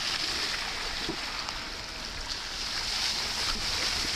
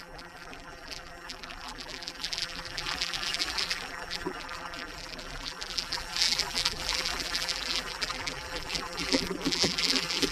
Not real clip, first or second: second